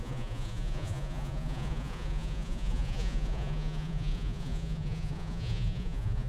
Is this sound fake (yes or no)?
yes